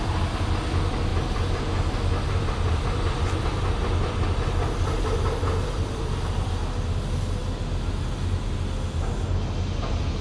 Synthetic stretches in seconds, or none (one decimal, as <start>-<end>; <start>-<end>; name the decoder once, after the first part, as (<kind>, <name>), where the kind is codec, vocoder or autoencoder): 0.0-1.1 (vocoder, BigVGAN v2); 2.3-7.4